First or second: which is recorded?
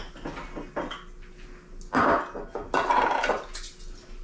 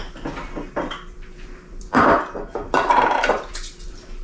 first